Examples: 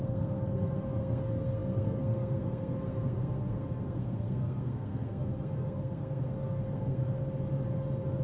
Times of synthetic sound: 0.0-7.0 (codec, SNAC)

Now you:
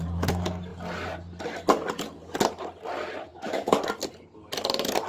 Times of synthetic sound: 3.3-3.8 (autoencoder, DAC-VAE)

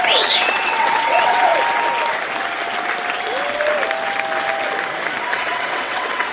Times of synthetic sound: 0.0-1.5 (vocoder, WaveNeXt); 5.3-6.3

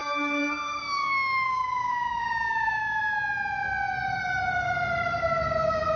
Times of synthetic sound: 0.0-3.0 (codec, DAC)

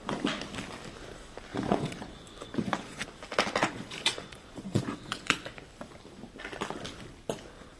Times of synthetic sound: 1.5-3.0 (vocoder, Vocos); 3.6-5.5